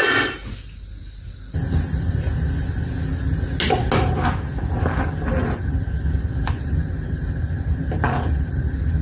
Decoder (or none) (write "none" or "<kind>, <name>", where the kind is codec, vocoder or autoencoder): none